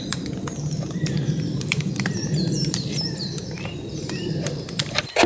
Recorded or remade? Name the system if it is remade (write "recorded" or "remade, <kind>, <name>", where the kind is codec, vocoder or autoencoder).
remade, vocoder, BigVGAN v2